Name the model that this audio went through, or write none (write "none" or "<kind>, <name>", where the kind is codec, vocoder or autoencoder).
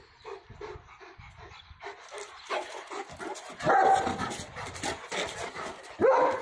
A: none